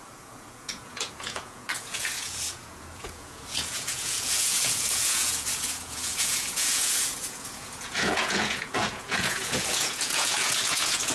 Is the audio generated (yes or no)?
yes